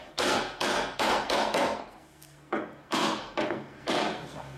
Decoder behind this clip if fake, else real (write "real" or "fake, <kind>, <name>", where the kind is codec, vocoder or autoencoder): fake, codec, SNAC